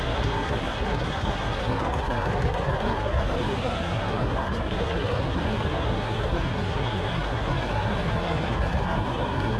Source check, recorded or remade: remade